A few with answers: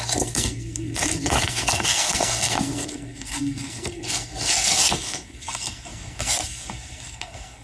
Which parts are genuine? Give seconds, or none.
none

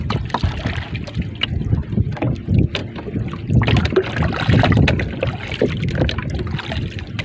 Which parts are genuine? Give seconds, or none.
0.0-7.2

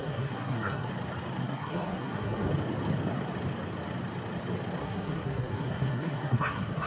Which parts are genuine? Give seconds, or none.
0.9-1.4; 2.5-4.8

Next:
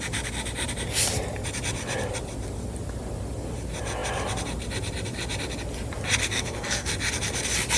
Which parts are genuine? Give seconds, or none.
0.0-6.2; 6.9-7.8

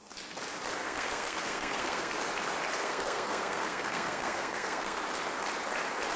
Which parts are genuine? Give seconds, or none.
0.0-0.8; 2.1-2.8; 5.0-6.2

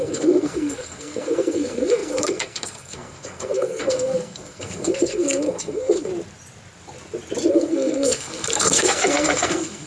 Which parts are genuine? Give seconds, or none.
6.1-7.5

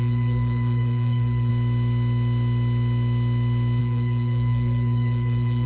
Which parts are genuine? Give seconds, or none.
1.5-3.8

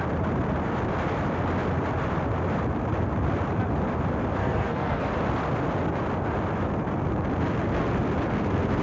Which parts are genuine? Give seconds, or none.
0.0-4.4; 5.1-8.8